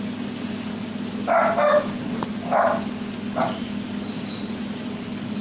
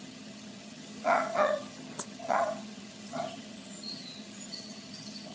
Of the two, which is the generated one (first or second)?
second